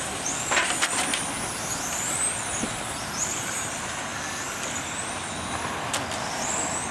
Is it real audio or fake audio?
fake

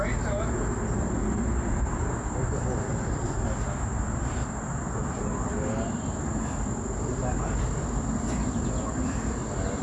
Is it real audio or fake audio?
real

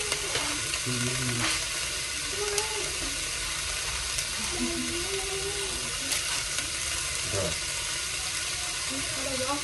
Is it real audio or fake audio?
real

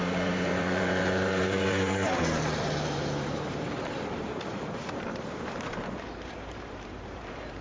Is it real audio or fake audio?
fake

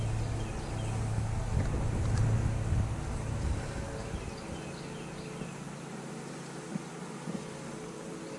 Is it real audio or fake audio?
real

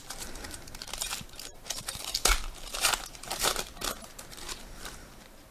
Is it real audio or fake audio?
fake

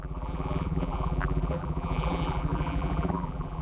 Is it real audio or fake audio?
fake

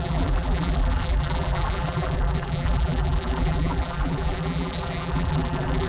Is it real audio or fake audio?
fake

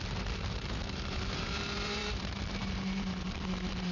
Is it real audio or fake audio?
fake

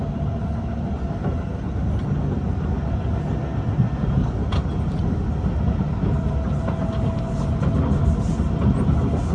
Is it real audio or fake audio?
real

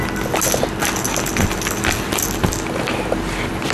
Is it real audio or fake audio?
real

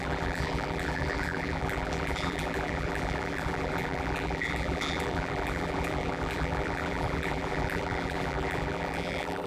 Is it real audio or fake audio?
fake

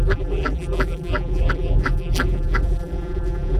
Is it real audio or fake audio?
fake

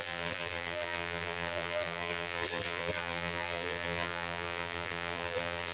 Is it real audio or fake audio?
fake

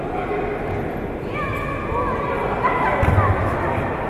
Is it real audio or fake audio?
real